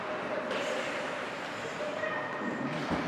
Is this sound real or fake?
real